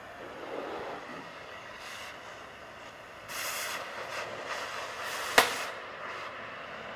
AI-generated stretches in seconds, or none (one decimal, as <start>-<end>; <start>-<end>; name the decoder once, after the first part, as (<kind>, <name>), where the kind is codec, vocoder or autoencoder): 1.1-2.0 (codec, DAC)